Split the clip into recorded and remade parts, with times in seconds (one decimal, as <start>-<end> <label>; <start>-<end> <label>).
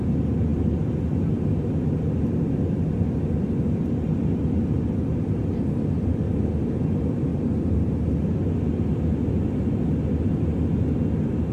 0.0-11.5 recorded